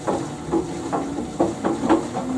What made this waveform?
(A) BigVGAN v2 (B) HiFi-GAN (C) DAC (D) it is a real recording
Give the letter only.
D